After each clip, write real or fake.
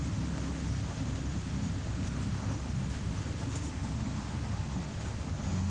fake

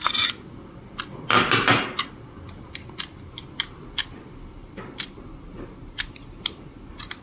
real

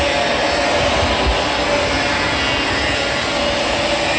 real